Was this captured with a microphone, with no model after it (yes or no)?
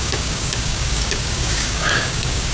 no